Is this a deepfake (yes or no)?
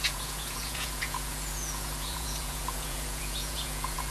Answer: yes